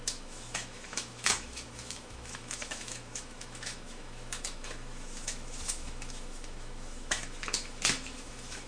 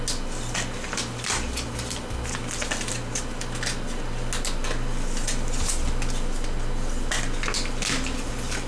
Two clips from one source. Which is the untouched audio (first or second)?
second